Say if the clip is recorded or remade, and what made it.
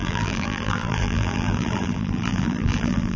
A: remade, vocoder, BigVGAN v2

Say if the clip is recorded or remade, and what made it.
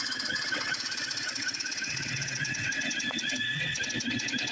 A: remade, vocoder, WaveNeXt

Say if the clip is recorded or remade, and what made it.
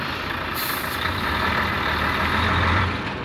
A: remade, vocoder, BigVGAN v2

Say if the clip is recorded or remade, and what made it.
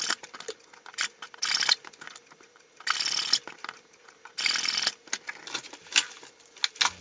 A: recorded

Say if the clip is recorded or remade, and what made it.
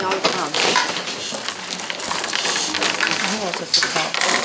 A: recorded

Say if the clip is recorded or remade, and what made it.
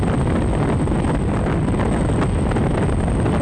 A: recorded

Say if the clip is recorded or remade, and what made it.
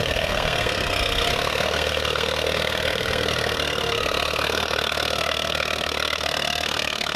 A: remade, codec, SNAC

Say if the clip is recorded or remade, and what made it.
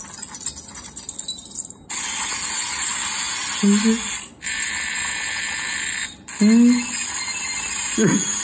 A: recorded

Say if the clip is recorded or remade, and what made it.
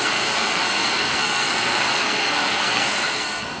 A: remade, codec, SNAC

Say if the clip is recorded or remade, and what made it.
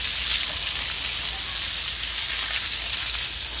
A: recorded